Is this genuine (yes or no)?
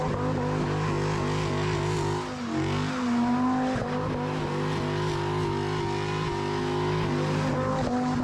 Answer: yes